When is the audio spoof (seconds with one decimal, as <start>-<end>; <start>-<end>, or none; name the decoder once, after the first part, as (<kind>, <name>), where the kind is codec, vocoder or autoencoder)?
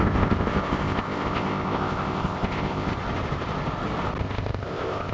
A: 0.0-2.9 (codec, ZipCodec); 4.2-5.1